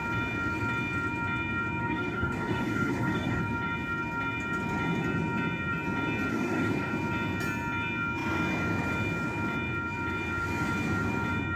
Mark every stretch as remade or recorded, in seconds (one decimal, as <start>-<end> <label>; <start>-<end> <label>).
0.0-1.8 recorded; 1.8-3.4 remade; 3.4-6.3 recorded; 6.3-6.9 remade; 6.9-11.6 recorded